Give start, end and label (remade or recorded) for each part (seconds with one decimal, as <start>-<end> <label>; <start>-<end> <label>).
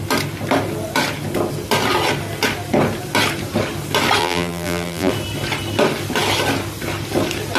0.0-4.2 recorded; 4.2-5.1 remade; 5.1-7.6 recorded